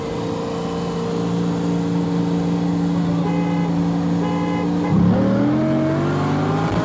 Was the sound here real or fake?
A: real